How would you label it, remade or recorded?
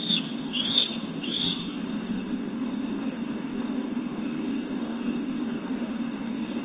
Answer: remade